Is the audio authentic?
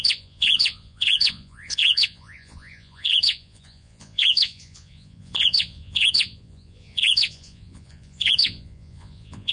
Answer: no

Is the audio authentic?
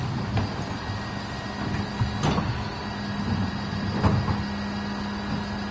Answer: yes